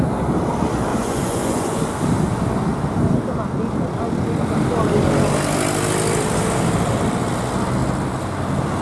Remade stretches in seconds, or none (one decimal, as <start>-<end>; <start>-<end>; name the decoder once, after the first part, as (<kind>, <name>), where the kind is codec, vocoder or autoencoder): 0.9-1.8 (vocoder, Vocos)